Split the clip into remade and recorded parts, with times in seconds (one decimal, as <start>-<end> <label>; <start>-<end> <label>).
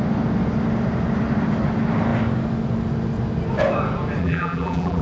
0.0-4.2 recorded; 4.2-5.0 remade